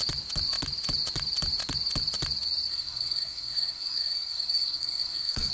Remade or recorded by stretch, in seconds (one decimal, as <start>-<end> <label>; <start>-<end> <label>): 0.0-2.7 recorded; 2.7-5.5 remade